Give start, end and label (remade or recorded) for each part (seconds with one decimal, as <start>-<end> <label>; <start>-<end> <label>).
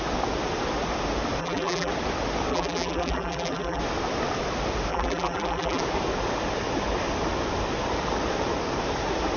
0.0-1.4 recorded; 1.4-1.9 remade; 1.9-2.5 recorded; 2.5-3.8 remade; 3.8-4.9 recorded; 4.9-5.8 remade; 5.8-9.4 recorded